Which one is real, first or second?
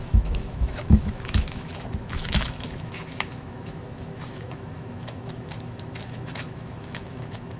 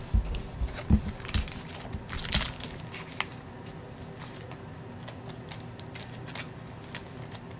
second